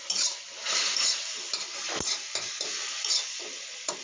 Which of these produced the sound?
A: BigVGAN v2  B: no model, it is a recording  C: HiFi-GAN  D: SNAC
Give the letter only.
B